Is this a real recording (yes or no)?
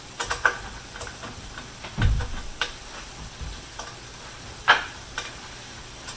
no